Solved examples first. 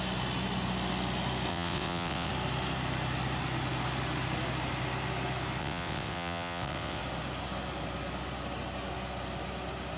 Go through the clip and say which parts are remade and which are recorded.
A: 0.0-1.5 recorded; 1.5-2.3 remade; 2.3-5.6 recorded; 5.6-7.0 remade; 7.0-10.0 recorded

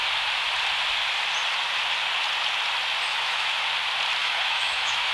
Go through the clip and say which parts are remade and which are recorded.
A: 0.0-3.1 recorded; 3.1-3.7 remade; 3.7-4.2 recorded; 4.2-5.1 remade

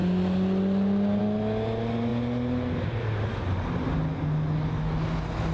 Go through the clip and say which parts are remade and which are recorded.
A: 0.0-5.5 recorded